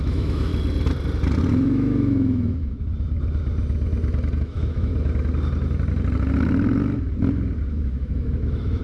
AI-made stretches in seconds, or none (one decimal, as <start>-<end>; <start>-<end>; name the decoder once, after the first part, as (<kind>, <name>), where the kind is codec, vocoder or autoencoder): 0.0-0.5 (autoencoder, DAC-VAE); 1.5-2.9; 4.4-4.9; 7.7-8.8